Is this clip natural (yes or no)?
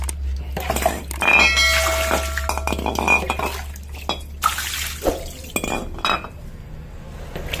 yes